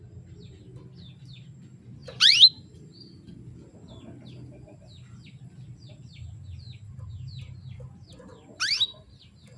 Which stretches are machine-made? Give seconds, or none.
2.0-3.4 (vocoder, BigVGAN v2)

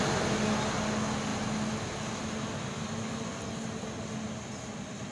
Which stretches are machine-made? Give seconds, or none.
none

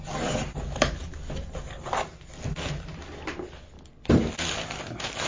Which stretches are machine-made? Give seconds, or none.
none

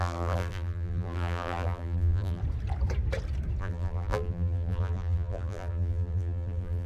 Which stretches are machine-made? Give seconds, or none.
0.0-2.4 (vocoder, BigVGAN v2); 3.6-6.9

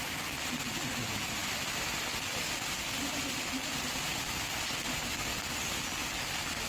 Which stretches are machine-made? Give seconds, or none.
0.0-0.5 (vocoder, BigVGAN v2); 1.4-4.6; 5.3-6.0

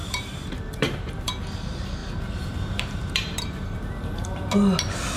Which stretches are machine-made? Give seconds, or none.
0.0-1.4 (vocoder, BigVGAN v2); 2.0-3.8

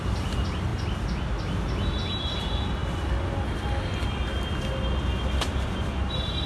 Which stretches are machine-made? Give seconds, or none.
none

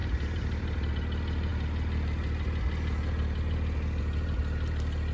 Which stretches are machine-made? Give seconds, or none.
0.0-0.9 (vocoder, BigVGAN v2)